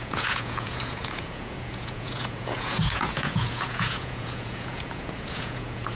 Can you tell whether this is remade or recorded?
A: remade